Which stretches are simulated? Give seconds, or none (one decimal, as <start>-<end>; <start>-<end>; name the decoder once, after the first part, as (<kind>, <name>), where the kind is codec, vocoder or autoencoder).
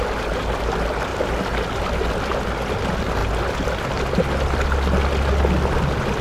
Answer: none